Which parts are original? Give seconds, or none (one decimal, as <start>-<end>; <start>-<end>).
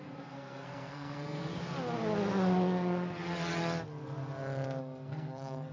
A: 1.4-4.8